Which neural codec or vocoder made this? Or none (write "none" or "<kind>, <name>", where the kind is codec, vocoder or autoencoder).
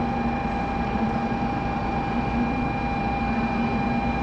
none